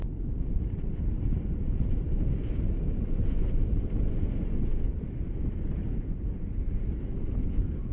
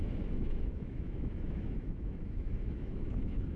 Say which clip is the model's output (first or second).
second